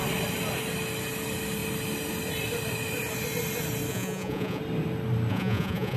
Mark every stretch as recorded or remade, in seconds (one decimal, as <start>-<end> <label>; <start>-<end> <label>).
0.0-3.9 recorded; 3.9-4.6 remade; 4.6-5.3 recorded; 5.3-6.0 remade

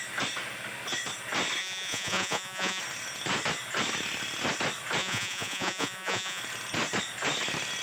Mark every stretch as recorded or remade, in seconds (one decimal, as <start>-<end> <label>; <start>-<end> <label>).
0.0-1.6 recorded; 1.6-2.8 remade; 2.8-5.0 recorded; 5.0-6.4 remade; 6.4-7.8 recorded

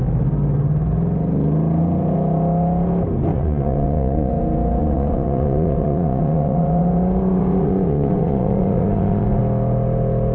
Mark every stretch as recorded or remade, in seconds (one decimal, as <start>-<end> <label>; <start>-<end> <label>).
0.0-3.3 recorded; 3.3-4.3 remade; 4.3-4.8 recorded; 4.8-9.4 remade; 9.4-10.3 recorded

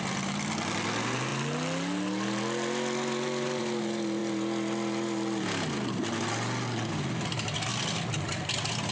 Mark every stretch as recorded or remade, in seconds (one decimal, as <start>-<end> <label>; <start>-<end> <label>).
0.0-8.9 recorded